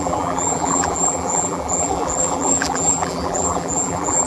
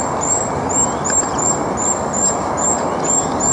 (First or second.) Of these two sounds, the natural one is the second